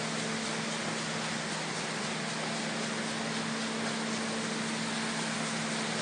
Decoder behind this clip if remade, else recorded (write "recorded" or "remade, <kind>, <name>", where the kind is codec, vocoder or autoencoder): recorded